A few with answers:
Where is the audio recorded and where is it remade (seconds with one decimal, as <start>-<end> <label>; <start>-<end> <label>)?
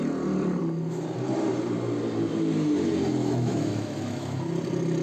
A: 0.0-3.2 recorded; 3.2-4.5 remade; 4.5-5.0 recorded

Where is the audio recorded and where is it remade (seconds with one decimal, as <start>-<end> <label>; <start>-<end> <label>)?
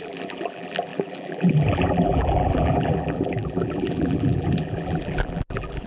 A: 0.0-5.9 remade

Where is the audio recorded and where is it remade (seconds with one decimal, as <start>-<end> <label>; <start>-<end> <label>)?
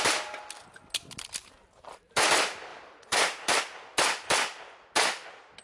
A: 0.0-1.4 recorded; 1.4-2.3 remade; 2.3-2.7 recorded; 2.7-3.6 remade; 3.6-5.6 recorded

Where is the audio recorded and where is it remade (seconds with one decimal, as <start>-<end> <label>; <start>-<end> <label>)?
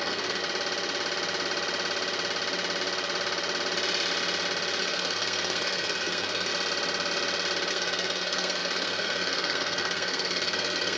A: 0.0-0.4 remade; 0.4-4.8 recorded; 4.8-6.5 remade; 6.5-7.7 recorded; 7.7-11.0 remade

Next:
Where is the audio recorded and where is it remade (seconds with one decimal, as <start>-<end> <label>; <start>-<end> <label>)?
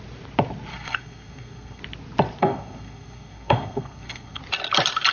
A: 0.0-0.7 recorded; 0.7-1.8 remade; 1.8-2.4 recorded; 2.4-4.4 remade; 4.4-5.1 recorded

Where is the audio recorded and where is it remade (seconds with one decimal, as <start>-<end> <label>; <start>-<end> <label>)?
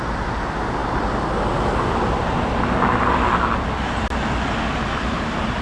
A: 0.0-5.6 recorded